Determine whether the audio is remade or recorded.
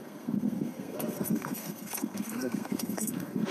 remade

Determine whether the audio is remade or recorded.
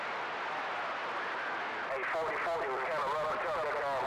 recorded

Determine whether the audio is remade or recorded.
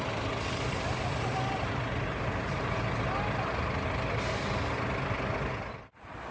recorded